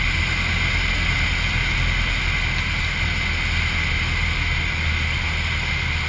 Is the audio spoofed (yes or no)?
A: no